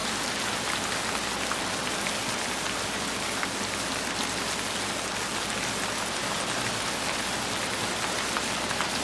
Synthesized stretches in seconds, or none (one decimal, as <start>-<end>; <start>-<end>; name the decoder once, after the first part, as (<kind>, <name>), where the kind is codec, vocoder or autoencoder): none